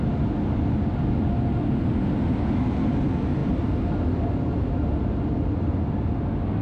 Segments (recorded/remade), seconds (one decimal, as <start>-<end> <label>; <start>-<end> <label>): 0.0-6.6 recorded